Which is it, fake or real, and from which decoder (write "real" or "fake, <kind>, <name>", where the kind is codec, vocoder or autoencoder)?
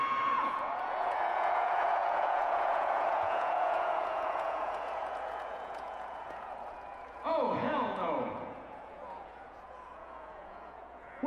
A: fake, vocoder, Vocos